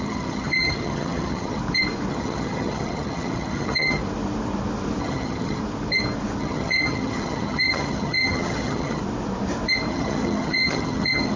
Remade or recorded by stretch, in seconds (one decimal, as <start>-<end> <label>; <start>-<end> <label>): 0.0-1.6 remade; 1.6-2.1 recorded; 2.1-4.0 remade; 4.0-5.0 recorded; 5.0-5.6 remade; 5.6-6.4 recorded; 6.4-9.0 remade; 9.0-9.9 recorded; 9.9-11.4 remade